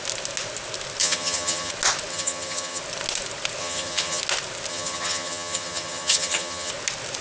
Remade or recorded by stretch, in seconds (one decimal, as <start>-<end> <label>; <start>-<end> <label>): 0.0-1.0 recorded; 1.0-1.7 remade; 1.7-2.1 recorded; 2.1-2.8 remade; 2.8-3.6 recorded; 3.6-4.2 remade; 4.2-4.7 recorded; 4.7-6.7 remade; 6.7-7.2 recorded